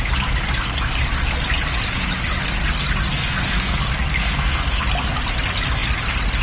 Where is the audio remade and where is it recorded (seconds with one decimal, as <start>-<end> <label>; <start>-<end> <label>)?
0.0-3.1 recorded; 3.1-3.8 remade; 3.8-4.2 recorded; 4.2-4.8 remade; 4.8-6.4 recorded